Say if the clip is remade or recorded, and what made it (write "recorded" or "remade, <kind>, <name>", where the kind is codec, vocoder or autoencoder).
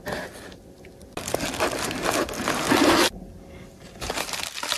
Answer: recorded